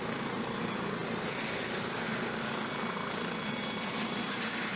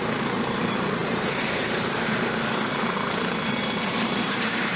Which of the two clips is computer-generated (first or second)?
second